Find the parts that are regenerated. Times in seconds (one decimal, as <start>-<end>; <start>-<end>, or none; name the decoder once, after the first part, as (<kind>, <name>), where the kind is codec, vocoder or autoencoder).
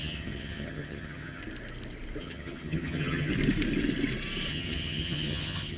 0.0-1.4 (vocoder, HiFi-GAN); 2.2-3.3; 4.5-5.8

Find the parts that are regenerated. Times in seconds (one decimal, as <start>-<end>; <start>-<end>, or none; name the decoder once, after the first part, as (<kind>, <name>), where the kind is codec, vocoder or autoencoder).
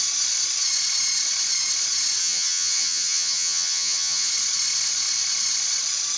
2.2-4.3 (vocoder, HiFi-GAN)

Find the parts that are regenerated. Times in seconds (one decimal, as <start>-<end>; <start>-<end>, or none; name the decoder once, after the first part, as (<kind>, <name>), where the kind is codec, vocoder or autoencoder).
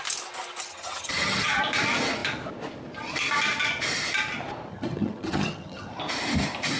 0.7-1.6 (vocoder, HiFi-GAN); 4.7-6.0